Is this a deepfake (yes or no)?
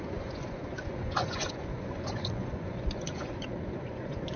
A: yes